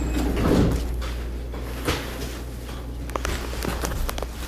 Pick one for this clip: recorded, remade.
recorded